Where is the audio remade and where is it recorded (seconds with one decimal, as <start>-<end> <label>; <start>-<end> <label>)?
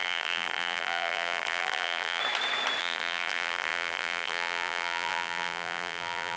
0.0-2.2 remade; 2.2-2.8 recorded; 2.8-6.4 remade